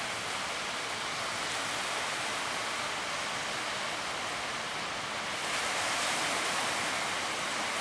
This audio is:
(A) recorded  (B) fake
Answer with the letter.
A